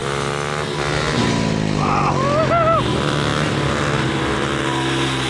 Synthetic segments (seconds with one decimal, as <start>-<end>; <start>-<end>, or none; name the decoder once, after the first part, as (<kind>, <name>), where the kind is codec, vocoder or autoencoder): none